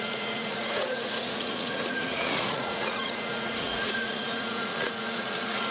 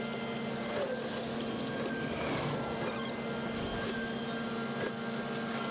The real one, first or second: second